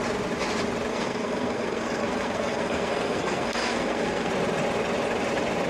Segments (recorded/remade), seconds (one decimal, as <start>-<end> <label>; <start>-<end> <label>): 0.0-0.9 recorded; 0.9-4.3 remade; 4.3-5.7 recorded